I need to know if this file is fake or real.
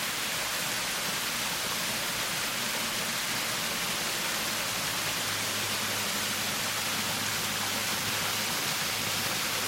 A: real